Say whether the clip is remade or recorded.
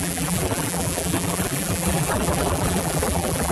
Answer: remade